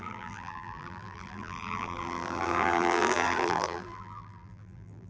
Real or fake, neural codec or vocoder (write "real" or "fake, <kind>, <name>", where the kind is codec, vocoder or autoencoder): fake, vocoder, BigVGAN v2